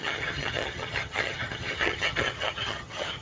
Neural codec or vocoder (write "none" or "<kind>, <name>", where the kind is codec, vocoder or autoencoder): vocoder, HiFi-GAN